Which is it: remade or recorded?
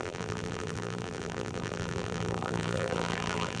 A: remade